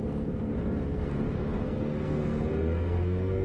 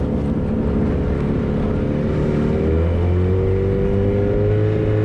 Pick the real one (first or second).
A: second